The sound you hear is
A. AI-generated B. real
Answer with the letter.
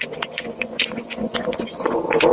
A